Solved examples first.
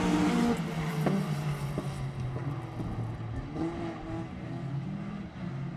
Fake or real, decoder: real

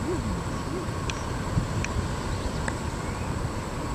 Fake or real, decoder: real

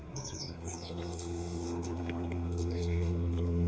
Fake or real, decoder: fake, codec, SNAC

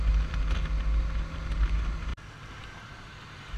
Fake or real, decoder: real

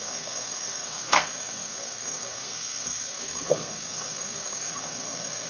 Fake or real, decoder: fake, codec, SNAC